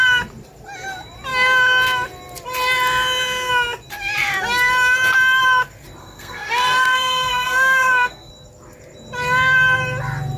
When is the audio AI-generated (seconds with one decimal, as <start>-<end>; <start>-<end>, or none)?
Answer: 6.0-8.3